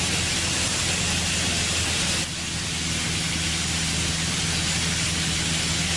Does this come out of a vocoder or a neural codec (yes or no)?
no